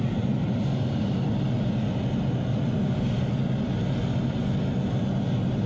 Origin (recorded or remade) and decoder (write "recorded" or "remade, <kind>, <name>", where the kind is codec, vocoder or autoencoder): recorded